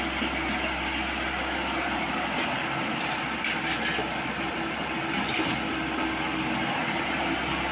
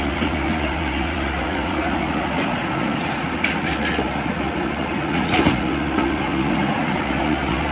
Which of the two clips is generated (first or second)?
second